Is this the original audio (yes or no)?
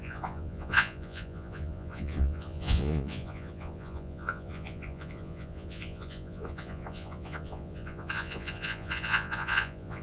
no